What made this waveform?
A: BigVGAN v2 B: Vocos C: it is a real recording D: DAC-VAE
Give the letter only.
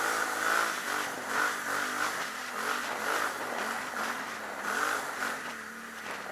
C